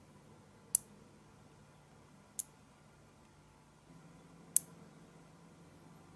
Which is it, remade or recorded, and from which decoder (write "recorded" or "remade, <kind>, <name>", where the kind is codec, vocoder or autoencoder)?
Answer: recorded